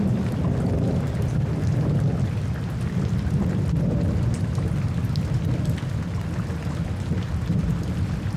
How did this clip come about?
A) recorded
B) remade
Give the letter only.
A